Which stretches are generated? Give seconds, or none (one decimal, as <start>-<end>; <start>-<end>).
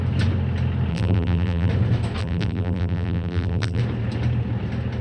0.9-1.7; 2.2-3.8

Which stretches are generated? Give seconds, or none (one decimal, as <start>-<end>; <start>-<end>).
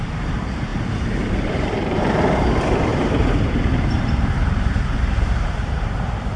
0.0-6.4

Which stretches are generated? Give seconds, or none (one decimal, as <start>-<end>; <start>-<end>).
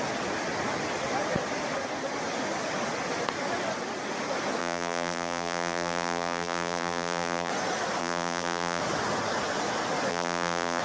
4.6-7.5; 8.0-8.8; 10.1-10.8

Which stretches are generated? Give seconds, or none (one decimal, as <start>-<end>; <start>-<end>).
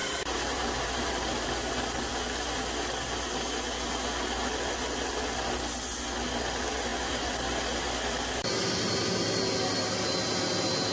0.0-1.7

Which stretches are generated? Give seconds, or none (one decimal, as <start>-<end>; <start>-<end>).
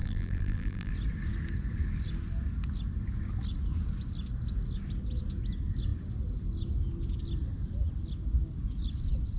0.0-0.9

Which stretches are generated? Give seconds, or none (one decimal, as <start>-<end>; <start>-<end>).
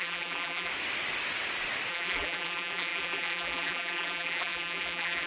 0.0-0.7; 1.9-5.3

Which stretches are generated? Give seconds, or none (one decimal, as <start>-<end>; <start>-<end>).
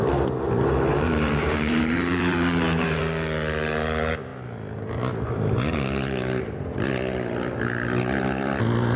0.9-3.0